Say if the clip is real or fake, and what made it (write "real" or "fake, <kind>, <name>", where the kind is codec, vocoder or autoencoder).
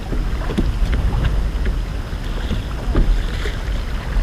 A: real